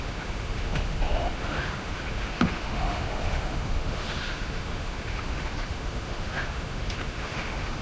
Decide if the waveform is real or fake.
fake